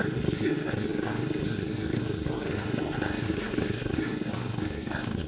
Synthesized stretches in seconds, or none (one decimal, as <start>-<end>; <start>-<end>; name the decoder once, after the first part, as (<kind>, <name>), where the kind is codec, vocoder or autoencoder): 0.0-5.3 (codec, SNAC)